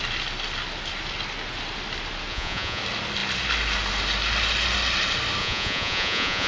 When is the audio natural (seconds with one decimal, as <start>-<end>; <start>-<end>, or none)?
0.0-2.3; 2.8-5.4